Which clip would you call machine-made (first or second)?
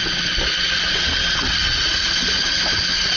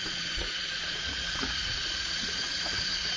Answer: second